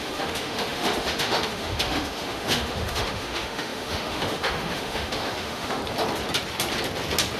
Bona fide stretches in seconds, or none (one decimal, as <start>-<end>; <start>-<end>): 5.8-7.4